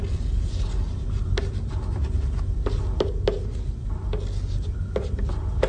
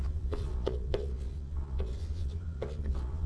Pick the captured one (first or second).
first